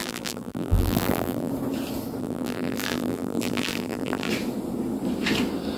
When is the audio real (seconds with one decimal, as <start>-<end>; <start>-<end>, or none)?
1.5-2.2; 4.3-5.8